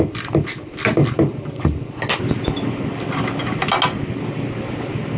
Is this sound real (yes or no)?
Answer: yes